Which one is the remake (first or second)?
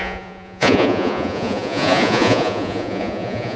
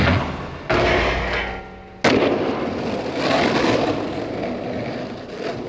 first